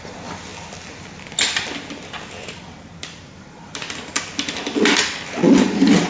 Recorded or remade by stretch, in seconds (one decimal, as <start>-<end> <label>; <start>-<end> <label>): 0.0-6.1 recorded